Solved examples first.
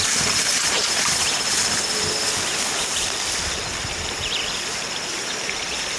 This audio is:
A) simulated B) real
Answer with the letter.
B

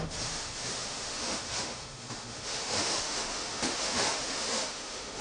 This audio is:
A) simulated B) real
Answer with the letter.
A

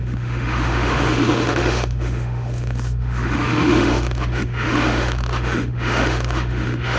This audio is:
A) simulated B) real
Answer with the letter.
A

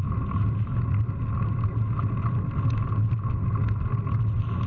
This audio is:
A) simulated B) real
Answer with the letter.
B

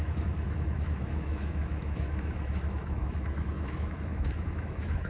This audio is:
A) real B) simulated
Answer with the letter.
B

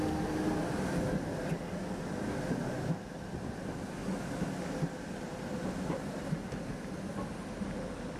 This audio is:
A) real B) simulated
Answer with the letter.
A